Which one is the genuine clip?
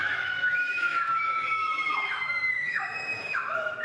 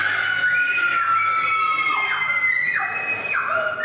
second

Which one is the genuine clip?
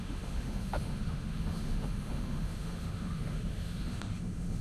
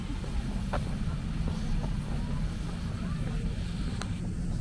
second